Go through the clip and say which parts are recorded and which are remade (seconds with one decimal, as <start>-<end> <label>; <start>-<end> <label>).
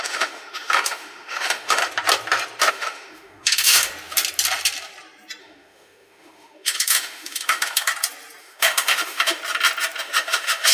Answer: 0.0-1.8 remade; 1.8-2.7 recorded; 2.7-3.9 remade; 3.9-5.4 recorded; 5.4-7.9 remade; 7.9-8.4 recorded; 8.4-9.4 remade; 9.4-10.0 recorded; 10.0-10.7 remade